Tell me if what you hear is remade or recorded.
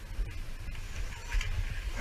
recorded